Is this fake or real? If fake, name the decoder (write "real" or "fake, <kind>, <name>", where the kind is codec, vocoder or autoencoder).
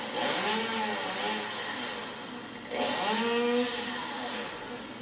real